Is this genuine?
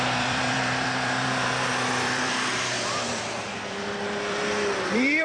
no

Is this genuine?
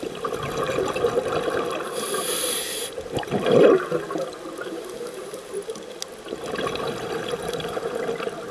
yes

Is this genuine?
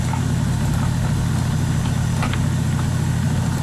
yes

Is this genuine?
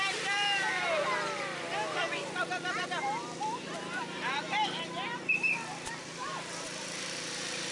no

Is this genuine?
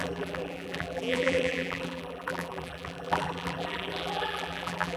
no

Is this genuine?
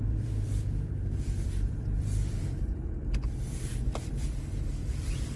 no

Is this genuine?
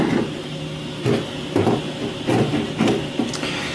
yes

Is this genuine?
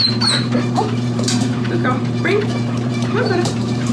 no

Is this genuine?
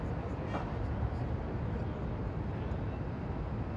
yes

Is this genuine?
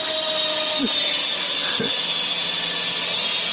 yes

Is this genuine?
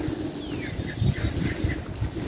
yes